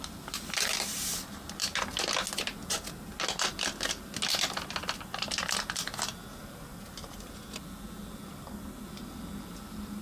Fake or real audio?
real